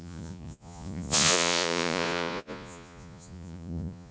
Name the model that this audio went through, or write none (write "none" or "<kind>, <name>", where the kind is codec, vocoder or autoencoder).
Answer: vocoder, Vocos